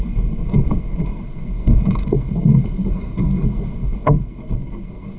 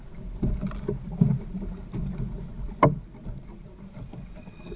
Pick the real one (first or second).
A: second